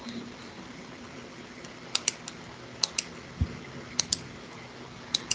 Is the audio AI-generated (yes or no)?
no